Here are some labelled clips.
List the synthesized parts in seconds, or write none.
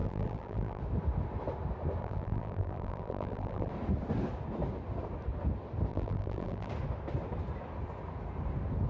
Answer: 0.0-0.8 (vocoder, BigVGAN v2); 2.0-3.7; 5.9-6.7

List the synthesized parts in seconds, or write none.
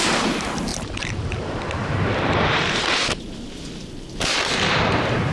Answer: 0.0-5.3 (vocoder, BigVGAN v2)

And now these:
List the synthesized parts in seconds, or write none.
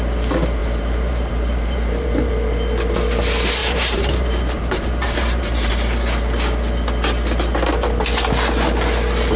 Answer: 0.6-2.3 (vocoder, BigVGAN v2); 3.6-5.7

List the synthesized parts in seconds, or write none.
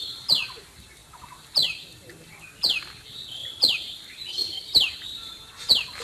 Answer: 3.4-5.3 (vocoder, BigVGAN v2)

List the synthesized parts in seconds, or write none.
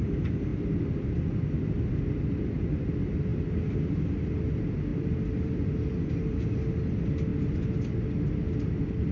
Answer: 4.9-6.4 (vocoder, BigVGAN v2)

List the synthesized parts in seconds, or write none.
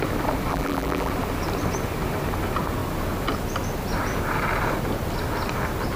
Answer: 0.5-1.1 (vocoder, BigVGAN v2)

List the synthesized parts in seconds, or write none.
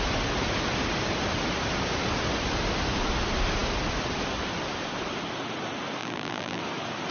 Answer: 6.0-6.6 (vocoder, BigVGAN v2)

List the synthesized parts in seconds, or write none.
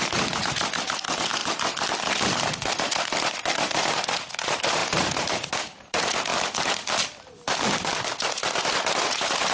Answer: 0.0-1.4 (vocoder, BigVGAN v2); 2.0-6.3; 8.6-9.5